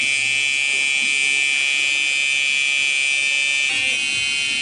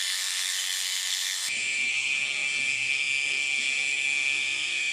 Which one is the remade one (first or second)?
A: second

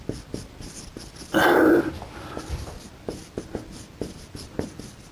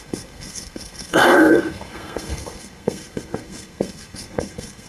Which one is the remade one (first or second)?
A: second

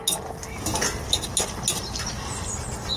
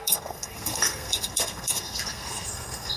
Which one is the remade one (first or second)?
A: second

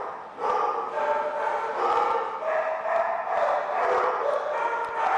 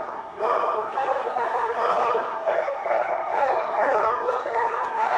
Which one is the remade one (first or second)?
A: second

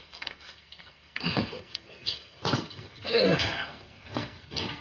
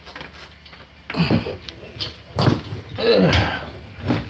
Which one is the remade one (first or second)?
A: first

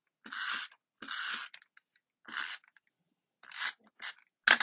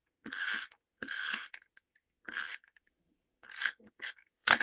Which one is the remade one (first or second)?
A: second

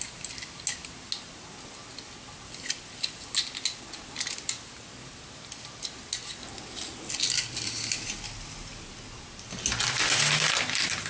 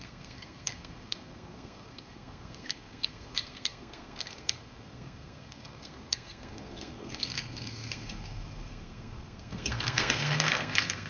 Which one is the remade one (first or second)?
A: second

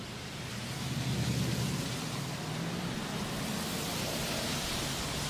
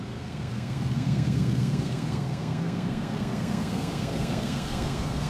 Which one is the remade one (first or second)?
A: second